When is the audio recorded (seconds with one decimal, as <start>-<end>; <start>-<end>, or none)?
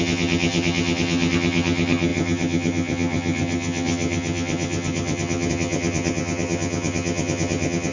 none